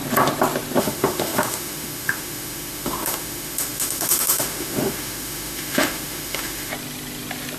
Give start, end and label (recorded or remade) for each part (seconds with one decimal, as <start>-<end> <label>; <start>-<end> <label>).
0.0-0.8 recorded; 0.8-6.7 remade; 6.7-7.6 recorded